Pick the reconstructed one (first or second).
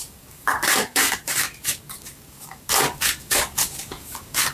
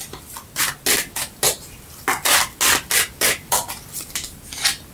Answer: first